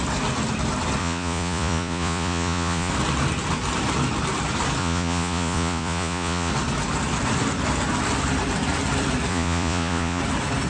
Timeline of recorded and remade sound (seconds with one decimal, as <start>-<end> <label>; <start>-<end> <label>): 0.0-1.0 recorded; 1.0-2.9 remade; 2.9-4.8 recorded; 4.8-6.5 remade; 6.5-9.3 recorded; 9.3-10.2 remade; 10.2-10.7 recorded